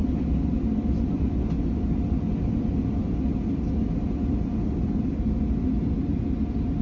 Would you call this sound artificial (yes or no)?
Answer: no